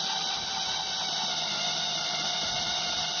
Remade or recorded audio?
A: remade